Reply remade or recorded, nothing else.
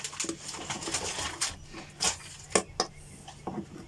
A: recorded